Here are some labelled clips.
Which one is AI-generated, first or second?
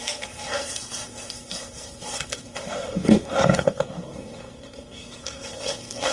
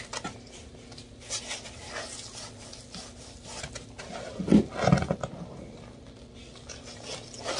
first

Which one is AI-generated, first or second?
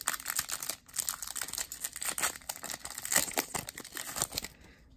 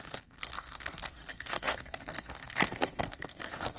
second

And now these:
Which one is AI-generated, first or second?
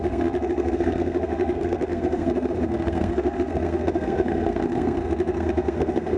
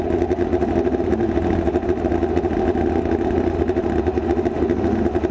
first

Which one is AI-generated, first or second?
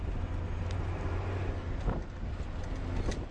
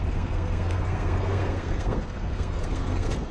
second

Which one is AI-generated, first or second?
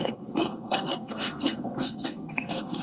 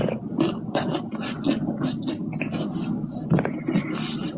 first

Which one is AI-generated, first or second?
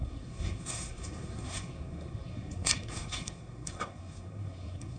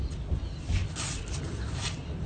first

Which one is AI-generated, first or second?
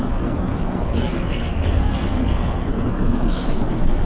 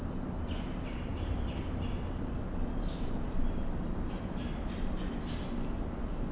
first